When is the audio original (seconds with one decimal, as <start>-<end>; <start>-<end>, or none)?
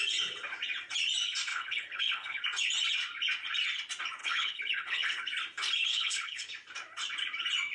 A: 0.0-1.5; 2.4-4.2; 5.2-5.8; 6.5-7.7